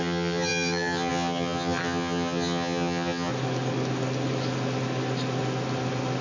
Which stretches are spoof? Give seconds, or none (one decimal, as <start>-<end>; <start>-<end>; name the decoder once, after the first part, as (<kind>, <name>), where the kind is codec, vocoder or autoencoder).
0.0-3.3 (vocoder, HiFi-GAN)